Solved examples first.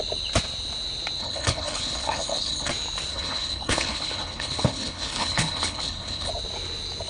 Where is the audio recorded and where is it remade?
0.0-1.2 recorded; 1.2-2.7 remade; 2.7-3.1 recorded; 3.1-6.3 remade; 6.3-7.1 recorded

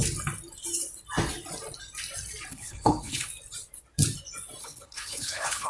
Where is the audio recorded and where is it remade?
0.0-2.5 recorded; 2.5-3.3 remade; 3.3-4.6 recorded; 4.6-5.7 remade

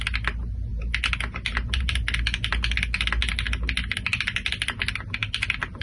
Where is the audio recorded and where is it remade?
0.0-5.8 recorded

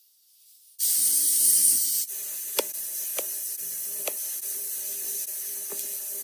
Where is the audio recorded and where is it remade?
0.0-3.1 recorded; 3.1-4.2 remade; 4.2-6.2 recorded